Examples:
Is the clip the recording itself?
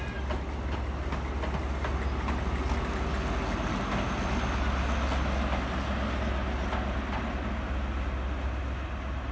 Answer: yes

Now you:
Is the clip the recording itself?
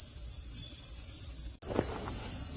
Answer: yes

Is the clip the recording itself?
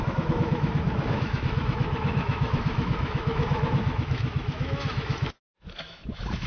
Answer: no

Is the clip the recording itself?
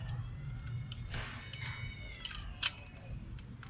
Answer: yes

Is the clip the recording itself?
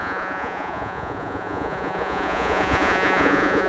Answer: no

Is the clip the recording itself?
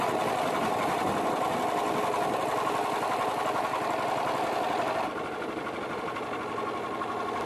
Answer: yes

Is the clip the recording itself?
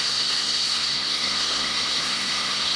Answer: no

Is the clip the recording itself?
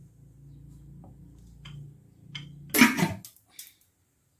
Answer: yes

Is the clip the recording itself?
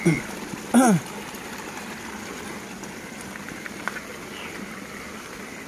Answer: yes